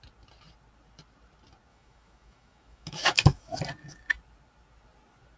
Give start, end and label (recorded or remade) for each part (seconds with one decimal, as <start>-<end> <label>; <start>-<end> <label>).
0.0-1.7 recorded; 1.7-3.6 remade; 3.6-5.4 recorded